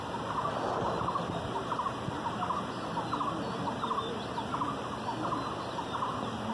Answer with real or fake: real